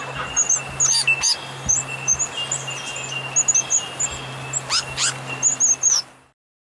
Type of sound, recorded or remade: recorded